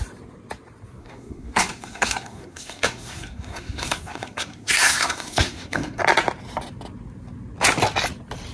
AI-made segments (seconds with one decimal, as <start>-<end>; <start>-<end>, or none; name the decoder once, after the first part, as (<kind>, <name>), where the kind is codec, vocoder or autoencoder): 1.0-6.0 (codec, SNAC)